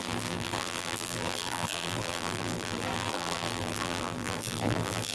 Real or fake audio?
fake